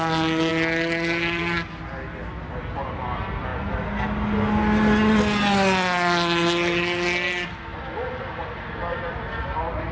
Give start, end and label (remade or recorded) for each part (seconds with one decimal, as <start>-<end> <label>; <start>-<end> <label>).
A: 0.0-9.9 recorded